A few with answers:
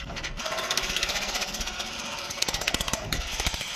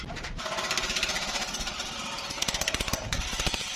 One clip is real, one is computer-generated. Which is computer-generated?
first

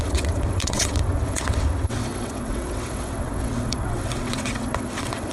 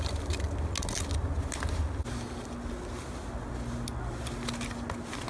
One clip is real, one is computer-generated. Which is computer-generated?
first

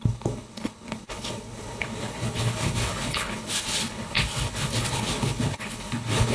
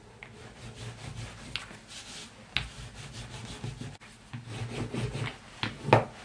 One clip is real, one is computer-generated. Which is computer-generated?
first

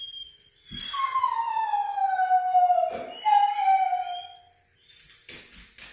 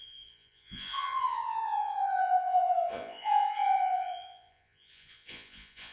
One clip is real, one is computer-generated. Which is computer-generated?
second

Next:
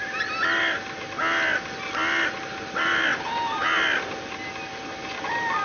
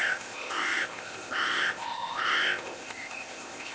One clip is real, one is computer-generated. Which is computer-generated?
second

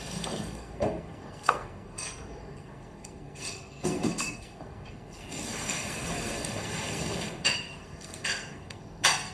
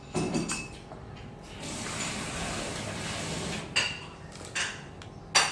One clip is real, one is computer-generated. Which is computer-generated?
first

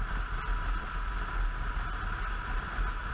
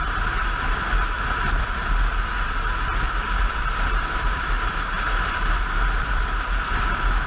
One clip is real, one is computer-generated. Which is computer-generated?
second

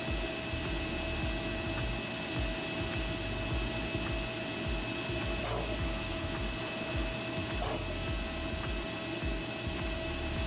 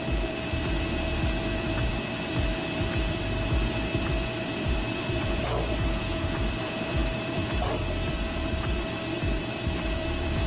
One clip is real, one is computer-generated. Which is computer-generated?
second